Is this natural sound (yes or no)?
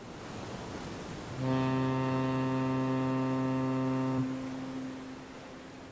yes